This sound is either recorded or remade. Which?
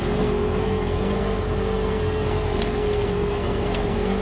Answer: remade